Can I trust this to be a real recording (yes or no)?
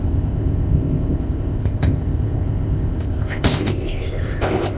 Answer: no